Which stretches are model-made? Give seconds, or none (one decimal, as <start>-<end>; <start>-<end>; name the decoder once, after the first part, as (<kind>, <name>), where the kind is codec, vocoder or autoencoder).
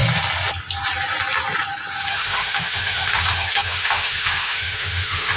2.1-5.4 (autoencoder, DAC-VAE)